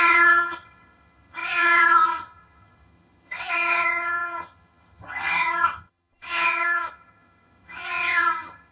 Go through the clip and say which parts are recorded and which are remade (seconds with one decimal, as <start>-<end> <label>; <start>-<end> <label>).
0.0-8.7 remade